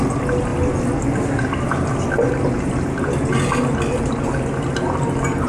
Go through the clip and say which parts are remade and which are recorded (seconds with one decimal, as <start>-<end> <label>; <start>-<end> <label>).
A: 0.0-5.5 recorded